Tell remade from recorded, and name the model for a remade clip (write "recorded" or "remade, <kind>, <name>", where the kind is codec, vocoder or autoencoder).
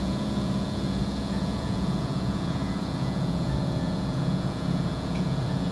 remade, vocoder, Vocos